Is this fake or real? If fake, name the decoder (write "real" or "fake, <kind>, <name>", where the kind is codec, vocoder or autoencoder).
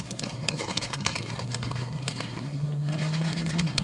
fake, codec, SNAC